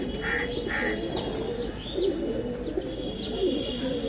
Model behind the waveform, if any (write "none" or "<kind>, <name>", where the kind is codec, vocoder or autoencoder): none